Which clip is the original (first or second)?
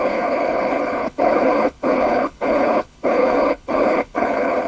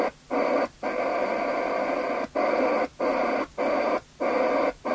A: second